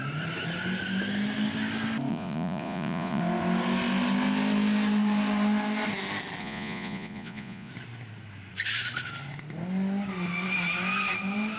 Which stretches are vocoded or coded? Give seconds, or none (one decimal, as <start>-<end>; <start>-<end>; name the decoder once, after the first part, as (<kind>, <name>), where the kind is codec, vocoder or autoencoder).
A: 2.1-3.2 (vocoder, Vocos); 6.4-7.7